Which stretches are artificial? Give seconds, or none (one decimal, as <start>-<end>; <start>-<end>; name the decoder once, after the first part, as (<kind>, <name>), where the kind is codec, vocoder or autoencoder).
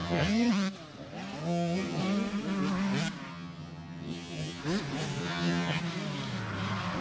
0.0-0.5 (vocoder, HiFi-GAN); 1.4-2.0; 3.3-4.6; 5.2-5.8